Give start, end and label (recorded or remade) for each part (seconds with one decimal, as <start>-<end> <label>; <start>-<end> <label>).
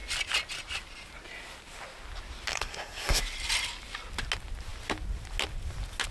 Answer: 0.0-2.5 recorded; 2.5-3.2 remade; 3.2-6.1 recorded